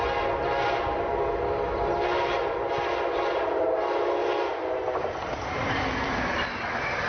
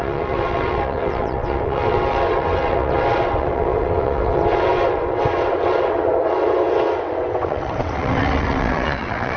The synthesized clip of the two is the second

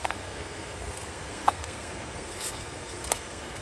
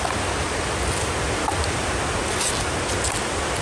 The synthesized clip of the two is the first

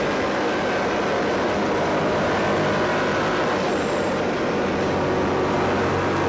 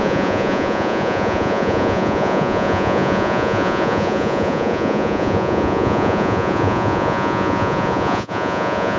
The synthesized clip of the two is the second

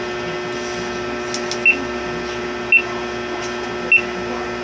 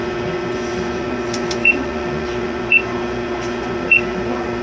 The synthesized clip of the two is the second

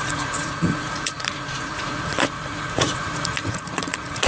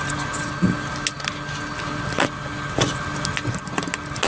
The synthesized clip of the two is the first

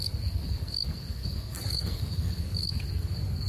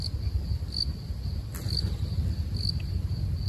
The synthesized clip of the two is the first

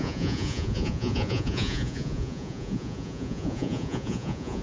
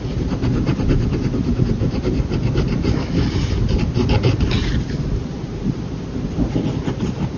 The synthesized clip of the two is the first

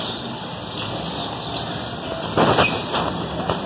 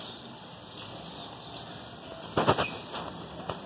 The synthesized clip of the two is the second